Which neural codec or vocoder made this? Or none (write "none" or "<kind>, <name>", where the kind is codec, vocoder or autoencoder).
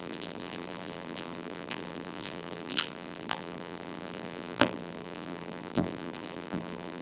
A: vocoder, BigVGAN v2